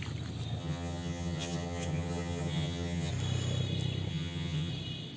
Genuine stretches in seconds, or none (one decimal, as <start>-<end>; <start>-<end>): 0.0-0.6; 3.1-4.1; 4.7-5.2